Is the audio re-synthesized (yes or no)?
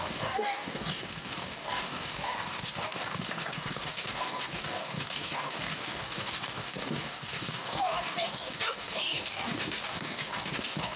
yes